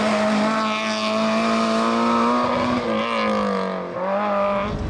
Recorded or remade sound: recorded